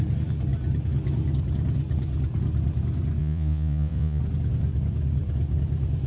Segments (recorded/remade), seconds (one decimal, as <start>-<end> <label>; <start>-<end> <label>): 0.0-3.2 recorded; 3.2-4.2 remade; 4.2-6.1 recorded